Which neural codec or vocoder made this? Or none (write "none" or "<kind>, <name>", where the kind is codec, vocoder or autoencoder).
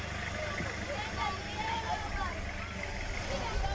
none